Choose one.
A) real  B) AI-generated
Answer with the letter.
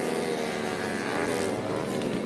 A